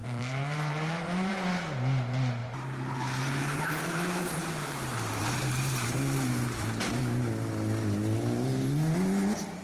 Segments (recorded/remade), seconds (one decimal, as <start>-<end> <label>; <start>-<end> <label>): 0.0-1.5 remade; 1.5-2.4 recorded; 2.4-7.0 remade; 7.0-9.6 recorded